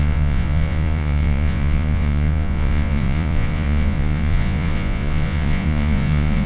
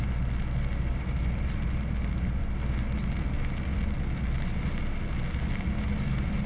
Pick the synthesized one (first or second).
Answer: first